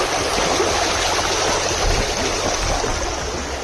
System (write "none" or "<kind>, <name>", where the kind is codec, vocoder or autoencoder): none